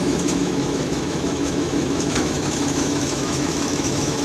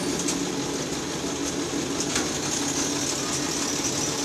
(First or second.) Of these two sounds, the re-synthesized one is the first